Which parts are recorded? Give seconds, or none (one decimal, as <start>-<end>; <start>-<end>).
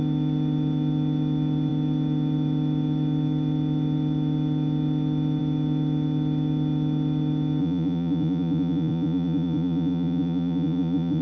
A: 0.0-7.6